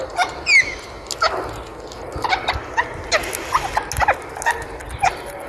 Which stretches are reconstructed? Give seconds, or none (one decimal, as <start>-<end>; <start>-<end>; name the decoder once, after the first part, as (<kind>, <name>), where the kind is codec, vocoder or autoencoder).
none